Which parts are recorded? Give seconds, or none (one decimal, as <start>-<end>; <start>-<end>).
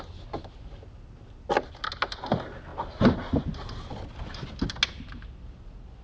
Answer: 0.0-6.0